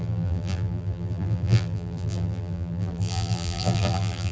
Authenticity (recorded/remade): remade